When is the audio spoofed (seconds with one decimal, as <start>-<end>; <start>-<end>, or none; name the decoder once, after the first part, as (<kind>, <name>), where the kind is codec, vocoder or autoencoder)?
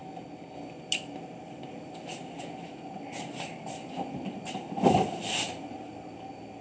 none